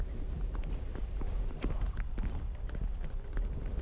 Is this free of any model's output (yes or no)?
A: yes